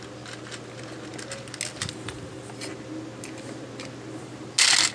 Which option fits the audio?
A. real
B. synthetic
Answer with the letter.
A